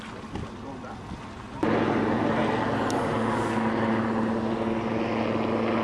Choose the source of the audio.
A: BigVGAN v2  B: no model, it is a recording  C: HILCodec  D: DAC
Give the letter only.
B